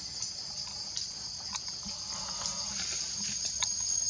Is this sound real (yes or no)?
yes